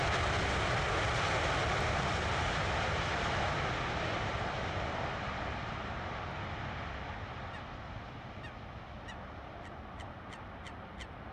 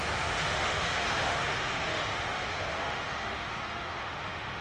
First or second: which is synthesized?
second